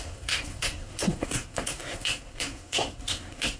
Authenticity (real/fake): fake